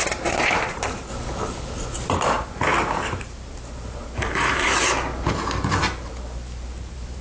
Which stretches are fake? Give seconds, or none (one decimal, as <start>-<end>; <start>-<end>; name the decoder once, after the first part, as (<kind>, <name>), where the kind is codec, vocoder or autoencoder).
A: 0.0-1.1 (vocoder, BigVGAN v2); 2.1-5.1; 6.7-7.2

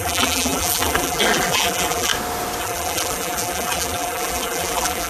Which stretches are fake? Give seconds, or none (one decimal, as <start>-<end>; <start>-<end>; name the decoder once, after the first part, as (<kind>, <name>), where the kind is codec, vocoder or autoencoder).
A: 0.0-2.1 (vocoder, BigVGAN v2); 2.6-5.1

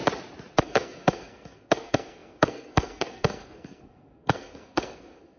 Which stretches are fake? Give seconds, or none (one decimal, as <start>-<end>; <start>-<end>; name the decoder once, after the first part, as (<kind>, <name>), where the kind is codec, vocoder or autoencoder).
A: 0.6-5.4 (codec, SNAC)

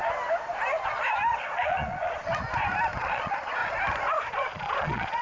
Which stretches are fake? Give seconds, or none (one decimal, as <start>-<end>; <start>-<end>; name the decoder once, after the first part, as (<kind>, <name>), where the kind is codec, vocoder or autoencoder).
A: 1.3-2.3 (vocoder, Vocos); 3.0-3.6; 4.3-5.2

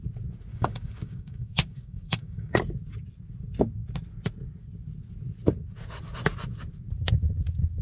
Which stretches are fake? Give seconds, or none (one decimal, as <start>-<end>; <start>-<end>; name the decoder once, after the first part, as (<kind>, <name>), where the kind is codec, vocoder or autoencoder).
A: 0.5-2.5 (codec, DAC)

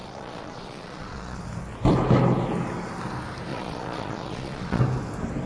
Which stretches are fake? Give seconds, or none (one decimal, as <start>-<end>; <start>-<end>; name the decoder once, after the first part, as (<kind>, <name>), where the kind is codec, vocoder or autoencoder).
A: 0.0-1.4 (vocoder, Vocos); 3.5-4.8

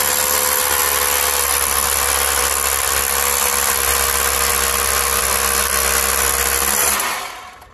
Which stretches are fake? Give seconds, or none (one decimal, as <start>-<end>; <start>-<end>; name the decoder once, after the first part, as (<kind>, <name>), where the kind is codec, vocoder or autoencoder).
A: none